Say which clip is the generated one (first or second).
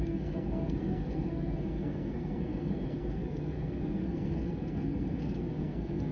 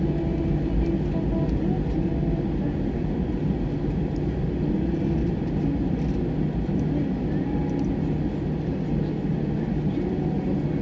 first